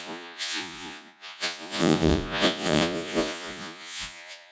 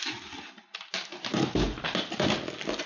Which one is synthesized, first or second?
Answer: first